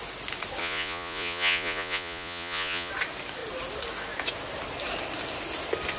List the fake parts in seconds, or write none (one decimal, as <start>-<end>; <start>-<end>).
0.6-2.9